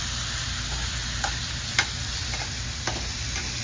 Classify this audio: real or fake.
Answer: real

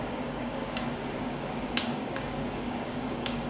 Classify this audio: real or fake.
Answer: fake